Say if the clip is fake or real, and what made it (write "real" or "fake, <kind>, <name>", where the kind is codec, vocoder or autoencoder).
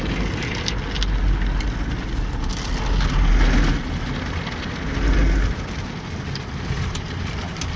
real